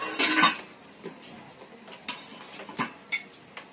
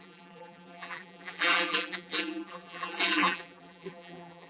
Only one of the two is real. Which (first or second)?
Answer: first